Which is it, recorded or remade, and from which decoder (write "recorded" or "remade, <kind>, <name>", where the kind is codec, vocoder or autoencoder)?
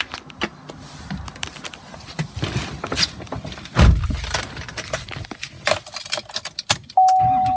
recorded